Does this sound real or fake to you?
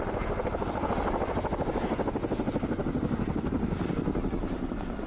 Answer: real